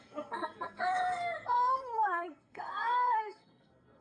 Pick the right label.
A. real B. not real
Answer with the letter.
B